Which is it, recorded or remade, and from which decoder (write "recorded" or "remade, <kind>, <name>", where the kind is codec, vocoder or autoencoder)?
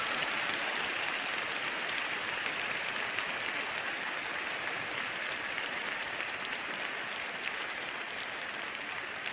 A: remade, vocoder, BigVGAN v2